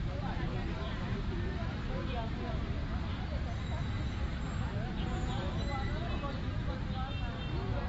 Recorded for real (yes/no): yes